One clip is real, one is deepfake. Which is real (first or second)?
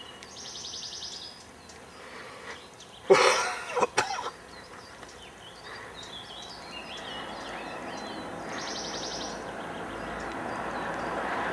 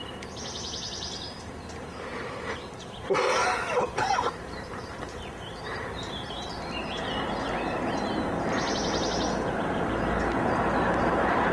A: first